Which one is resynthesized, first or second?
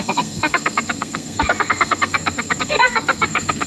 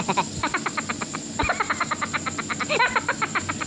first